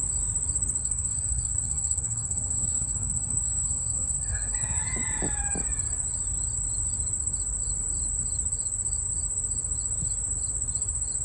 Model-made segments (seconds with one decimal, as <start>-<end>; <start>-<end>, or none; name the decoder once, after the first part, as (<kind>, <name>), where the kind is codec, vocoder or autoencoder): 0.8-4.8 (codec, SNAC)